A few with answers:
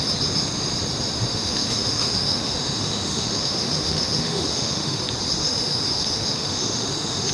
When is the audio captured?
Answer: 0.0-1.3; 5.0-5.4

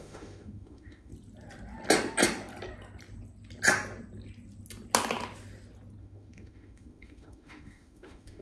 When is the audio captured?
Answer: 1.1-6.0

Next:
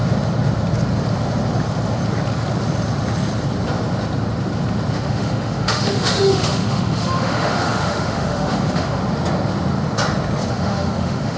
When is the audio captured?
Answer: 0.0-4.9; 9.0-10.5

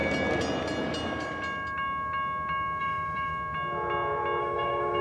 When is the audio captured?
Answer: 0.0-2.8; 3.3-4.4

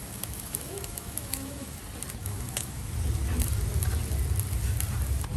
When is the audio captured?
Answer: 1.8-2.2; 2.9-5.4